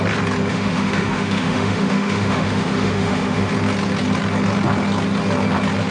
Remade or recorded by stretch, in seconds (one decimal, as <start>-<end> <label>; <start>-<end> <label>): 0.0-0.5 recorded; 0.5-3.5 remade; 3.5-5.9 recorded